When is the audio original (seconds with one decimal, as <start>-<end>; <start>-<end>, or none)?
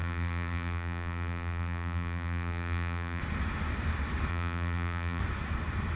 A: 3.2-4.3; 5.2-6.0